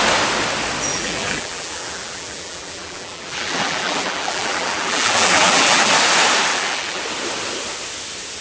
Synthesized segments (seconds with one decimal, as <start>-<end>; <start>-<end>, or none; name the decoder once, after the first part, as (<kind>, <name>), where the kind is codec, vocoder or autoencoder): 0.9-5.9 (vocoder, BigVGAN v2); 6.5-7.0

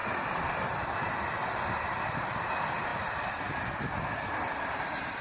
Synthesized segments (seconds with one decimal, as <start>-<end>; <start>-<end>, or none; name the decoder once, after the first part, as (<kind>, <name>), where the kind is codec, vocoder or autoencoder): 1.9-5.2 (vocoder, BigVGAN v2)

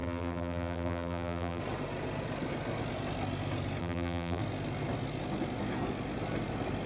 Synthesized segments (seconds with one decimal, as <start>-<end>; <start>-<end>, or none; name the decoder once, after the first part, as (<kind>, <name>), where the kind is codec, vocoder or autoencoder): 0.0-1.6 (vocoder, BigVGAN v2); 3.8-4.4

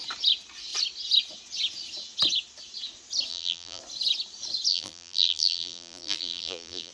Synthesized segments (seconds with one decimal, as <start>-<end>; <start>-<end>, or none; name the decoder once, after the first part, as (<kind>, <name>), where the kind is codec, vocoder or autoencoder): 3.3-3.8 (vocoder, BigVGAN v2); 4.7-6.9

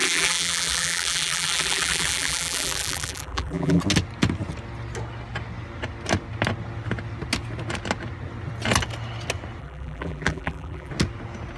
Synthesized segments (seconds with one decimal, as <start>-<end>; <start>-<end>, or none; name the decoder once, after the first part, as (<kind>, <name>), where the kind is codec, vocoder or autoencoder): 0.0-3.8 (vocoder, BigVGAN v2); 9.6-10.9

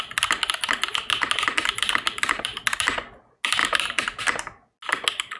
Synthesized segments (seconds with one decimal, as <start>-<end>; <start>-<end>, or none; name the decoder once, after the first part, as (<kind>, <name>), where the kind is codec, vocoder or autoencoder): 1.8-2.6 (vocoder, BigVGAN v2); 3.6-4.2